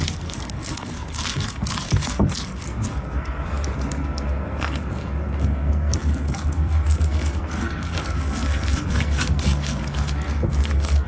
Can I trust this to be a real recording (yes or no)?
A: no